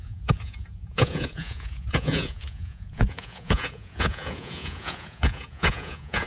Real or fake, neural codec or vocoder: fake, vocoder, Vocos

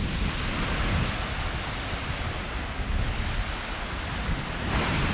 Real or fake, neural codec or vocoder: real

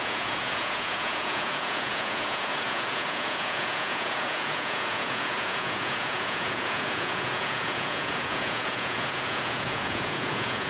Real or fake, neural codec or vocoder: fake, vocoder, Vocos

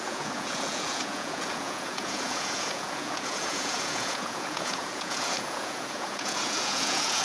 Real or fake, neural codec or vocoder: fake, vocoder, Vocos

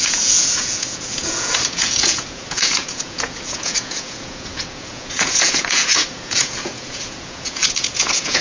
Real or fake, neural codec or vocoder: fake, vocoder, Vocos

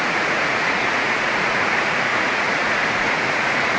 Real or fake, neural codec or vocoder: fake, vocoder, Vocos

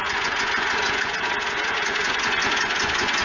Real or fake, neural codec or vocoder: fake, vocoder, Vocos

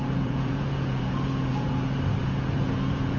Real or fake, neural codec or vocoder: fake, vocoder, Vocos